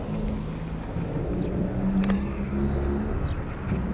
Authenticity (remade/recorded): recorded